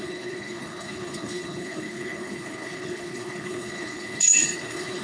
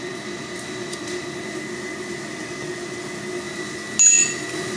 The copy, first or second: first